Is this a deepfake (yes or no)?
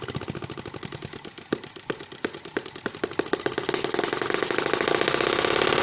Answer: no